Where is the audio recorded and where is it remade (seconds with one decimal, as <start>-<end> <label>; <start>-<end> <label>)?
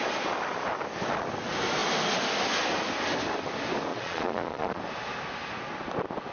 0.0-3.9 recorded; 3.9-4.8 remade; 4.8-6.3 recorded